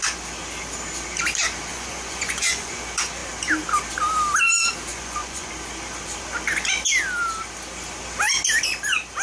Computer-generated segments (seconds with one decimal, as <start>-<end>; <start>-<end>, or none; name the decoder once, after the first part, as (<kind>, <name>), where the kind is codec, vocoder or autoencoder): 1.7-2.8 (vocoder, Vocos); 4.9-5.5